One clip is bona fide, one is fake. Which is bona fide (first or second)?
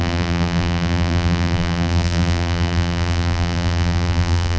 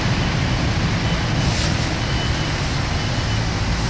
second